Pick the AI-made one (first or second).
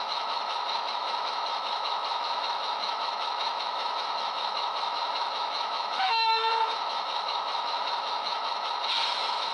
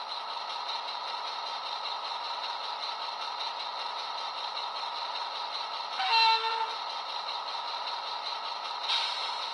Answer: first